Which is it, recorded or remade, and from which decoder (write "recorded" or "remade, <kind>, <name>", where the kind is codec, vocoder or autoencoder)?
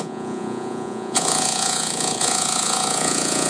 remade, vocoder, Vocos